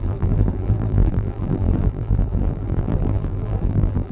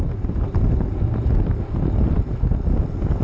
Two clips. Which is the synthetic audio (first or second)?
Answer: first